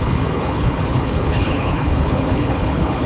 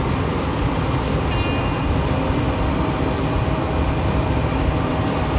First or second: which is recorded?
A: second